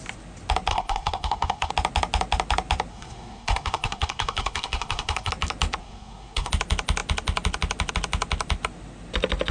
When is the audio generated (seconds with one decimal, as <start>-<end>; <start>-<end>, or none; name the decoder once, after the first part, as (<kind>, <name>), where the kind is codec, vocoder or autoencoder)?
0.7-1.7 (codec, SNAC); 2.9-5.3; 5.8-6.5

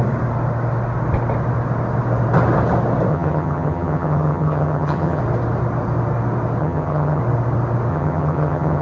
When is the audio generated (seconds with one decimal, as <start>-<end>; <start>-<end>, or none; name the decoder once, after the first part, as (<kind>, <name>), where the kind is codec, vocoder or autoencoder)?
3.1-5.2 (vocoder, HiFi-GAN); 6.6-7.2; 7.9-8.8

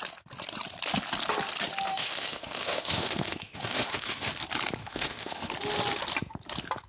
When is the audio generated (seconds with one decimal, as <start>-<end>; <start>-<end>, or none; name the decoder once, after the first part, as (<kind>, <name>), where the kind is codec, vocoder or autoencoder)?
1.9-4.3 (autoencoder, DAC-VAE); 4.8-5.5

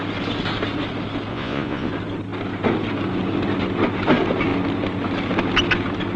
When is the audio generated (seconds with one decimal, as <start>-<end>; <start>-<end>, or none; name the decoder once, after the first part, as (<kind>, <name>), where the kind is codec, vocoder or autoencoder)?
1.3-1.9 (vocoder, Vocos)

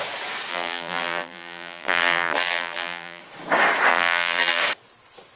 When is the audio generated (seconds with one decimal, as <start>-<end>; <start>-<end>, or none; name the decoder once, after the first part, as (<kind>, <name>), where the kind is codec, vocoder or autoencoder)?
0.5-3.2 (vocoder, BigVGAN v2); 3.9-4.6

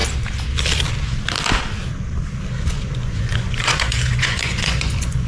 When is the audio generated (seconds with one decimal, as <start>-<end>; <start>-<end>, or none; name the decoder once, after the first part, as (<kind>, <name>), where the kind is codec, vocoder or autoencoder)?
2.6-5.3 (vocoder, Vocos)